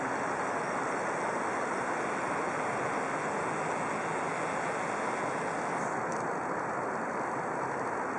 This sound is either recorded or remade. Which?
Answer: recorded